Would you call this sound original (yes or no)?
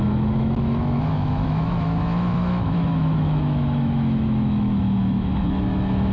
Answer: no